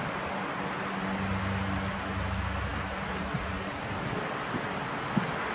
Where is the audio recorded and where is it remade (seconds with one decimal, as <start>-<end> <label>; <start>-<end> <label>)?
0.0-5.5 recorded